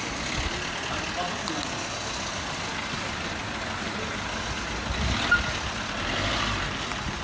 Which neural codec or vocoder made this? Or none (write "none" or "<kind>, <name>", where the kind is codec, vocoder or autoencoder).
none